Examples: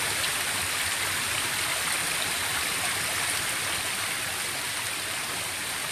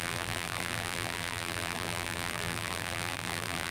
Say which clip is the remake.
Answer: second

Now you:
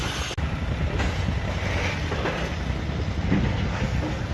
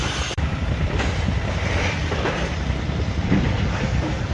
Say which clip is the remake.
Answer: second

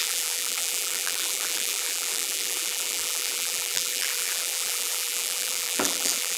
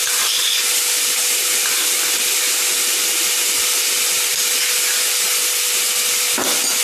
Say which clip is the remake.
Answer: first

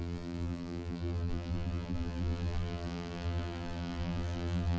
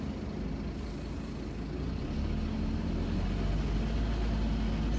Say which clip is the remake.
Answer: first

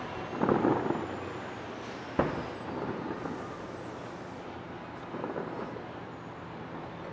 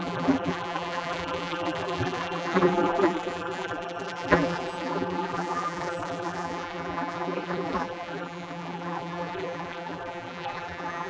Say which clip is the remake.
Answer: second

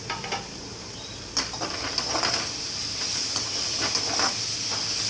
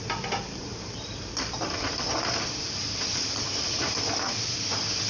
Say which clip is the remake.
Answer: second